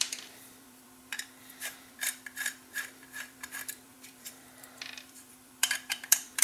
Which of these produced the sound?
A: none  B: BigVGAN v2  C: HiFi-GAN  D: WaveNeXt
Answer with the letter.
B